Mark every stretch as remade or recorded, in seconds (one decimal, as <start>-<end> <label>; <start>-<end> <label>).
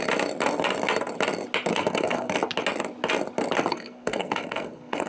0.0-1.7 recorded; 1.7-2.3 remade; 2.3-3.7 recorded; 3.7-5.1 remade